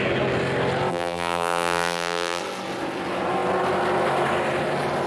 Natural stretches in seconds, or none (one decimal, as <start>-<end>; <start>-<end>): 0.0-0.9; 2.4-5.1